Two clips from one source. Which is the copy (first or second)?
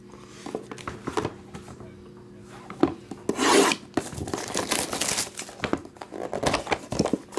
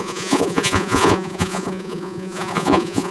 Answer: second